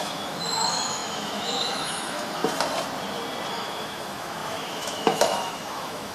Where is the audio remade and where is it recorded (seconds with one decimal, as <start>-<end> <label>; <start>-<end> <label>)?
0.0-2.4 remade; 2.4-3.5 recorded; 3.5-6.1 remade